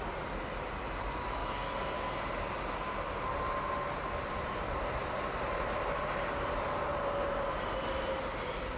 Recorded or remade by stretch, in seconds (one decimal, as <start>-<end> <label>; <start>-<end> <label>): 0.0-1.4 remade; 1.4-4.2 recorded; 4.2-8.8 remade

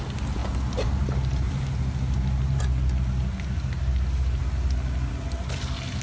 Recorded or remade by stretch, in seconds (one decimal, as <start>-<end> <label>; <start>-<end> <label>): 0.0-0.4 recorded; 0.4-2.6 remade; 2.6-6.0 recorded

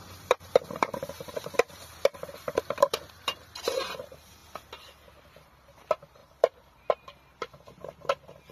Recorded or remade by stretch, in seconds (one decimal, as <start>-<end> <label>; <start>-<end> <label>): 0.0-4.4 remade; 4.4-5.2 recorded; 5.2-8.5 remade

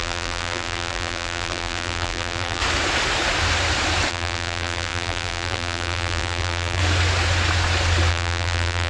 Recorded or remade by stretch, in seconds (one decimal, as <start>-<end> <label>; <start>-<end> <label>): 0.0-2.6 remade; 2.6-4.1 recorded; 4.1-6.8 remade; 6.8-8.1 recorded; 8.1-8.9 remade